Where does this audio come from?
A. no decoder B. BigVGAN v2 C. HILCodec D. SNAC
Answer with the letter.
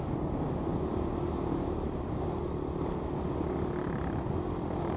A